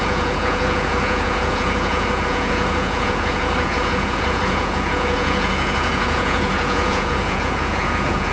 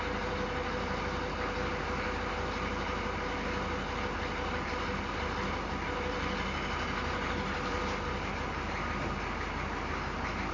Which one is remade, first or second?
first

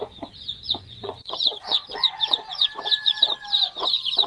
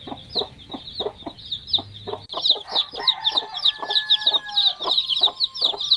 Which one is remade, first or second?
first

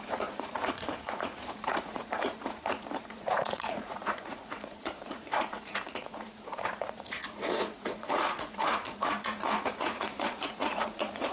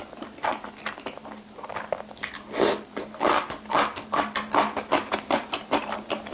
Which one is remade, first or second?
first